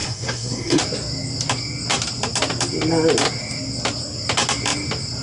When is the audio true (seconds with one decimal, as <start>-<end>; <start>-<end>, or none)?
0.8-5.2

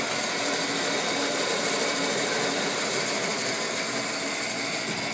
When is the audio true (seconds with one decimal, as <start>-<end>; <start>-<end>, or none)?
0.0-5.1

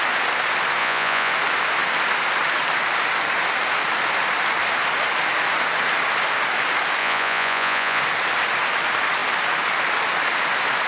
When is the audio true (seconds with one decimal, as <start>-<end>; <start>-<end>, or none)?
0.0-0.8; 1.3-7.0; 8.0-10.9

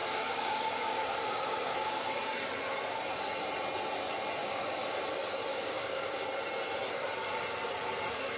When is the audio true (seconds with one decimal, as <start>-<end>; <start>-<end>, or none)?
2.1-4.4; 5.0-5.5; 6.2-8.4

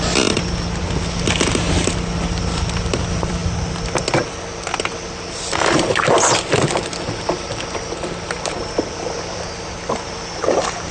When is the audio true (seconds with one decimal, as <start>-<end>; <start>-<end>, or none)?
3.4-5.3

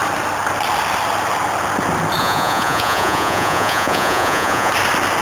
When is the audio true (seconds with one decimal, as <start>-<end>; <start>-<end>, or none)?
0.0-2.2; 4.7-5.2